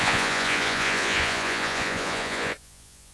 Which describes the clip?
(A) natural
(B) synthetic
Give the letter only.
B